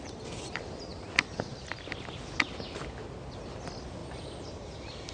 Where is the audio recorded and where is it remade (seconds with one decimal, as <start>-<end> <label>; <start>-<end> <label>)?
0.0-0.9 recorded; 0.9-2.5 remade; 2.5-4.0 recorded; 4.0-5.1 remade